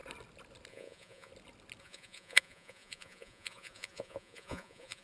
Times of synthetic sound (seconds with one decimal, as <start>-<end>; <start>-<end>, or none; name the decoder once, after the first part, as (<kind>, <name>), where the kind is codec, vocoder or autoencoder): 0.7-1.3 (vocoder, Vocos); 1.8-5.0